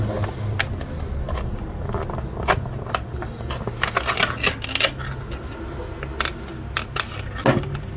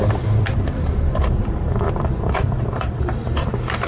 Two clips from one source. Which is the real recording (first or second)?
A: first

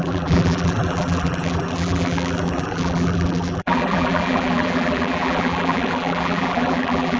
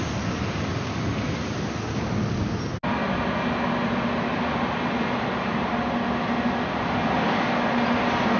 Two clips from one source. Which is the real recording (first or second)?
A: second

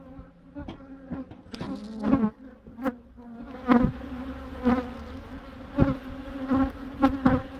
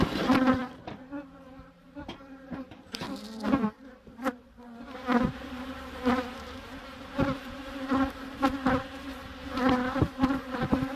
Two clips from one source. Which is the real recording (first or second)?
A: first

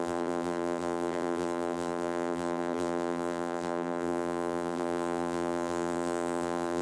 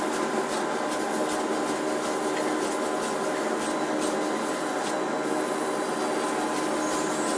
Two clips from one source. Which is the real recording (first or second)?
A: second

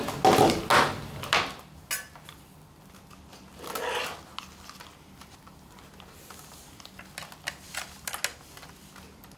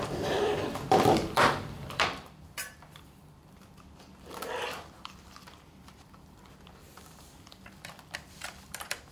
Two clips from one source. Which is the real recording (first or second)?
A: first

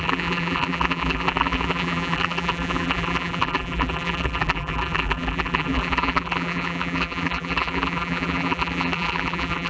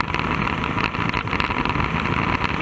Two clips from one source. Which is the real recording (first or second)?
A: second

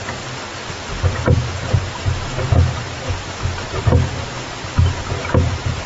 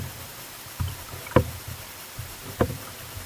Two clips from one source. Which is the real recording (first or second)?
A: first